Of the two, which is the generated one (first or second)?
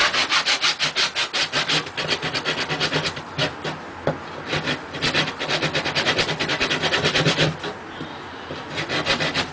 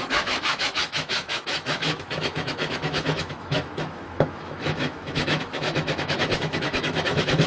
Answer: second